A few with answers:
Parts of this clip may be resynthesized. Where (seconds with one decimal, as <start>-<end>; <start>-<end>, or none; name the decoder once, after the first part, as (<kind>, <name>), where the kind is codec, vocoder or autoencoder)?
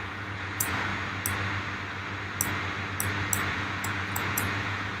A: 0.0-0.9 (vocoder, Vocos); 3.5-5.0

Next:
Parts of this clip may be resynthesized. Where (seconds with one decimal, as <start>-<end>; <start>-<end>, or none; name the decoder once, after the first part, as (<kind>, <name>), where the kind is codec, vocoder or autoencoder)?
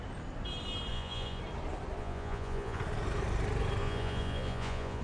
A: 0.9-1.4 (vocoder, Vocos); 2.0-2.8; 3.8-5.0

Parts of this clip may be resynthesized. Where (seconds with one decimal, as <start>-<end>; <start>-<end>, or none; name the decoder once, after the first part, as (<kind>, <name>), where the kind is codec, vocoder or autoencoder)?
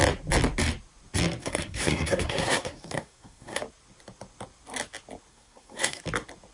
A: 1.4-3.6 (codec, SNAC); 5.3-6.0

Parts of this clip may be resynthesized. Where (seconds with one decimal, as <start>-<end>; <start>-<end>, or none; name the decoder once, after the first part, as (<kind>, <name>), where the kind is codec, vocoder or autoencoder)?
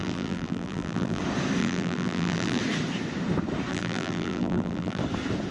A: 0.0-1.2 (vocoder, BigVGAN v2); 1.6-2.6; 3.7-5.0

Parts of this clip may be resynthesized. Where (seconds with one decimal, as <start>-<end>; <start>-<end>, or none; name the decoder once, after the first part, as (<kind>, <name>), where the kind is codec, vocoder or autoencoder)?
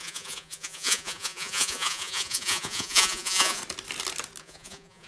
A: 0.0-3.6 (vocoder, Vocos); 4.4-5.1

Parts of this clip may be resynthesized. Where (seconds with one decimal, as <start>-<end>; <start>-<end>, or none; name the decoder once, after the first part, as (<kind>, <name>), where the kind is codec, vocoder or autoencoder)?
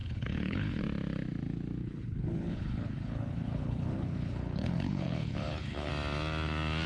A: 0.0-0.8 (codec, HILCodec); 1.8-5.9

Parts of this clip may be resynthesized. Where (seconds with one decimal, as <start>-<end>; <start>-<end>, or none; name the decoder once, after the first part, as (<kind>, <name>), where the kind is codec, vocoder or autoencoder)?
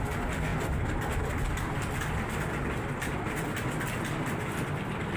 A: none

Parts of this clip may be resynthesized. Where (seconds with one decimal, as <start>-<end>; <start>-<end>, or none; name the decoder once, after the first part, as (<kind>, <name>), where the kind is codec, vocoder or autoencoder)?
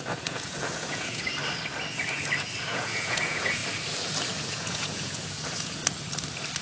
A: 0.0-1.3 (vocoder, Vocos); 2.6-3.6; 4.4-5.8